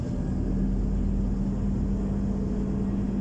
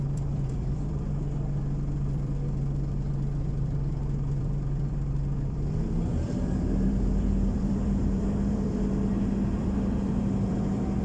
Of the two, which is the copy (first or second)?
second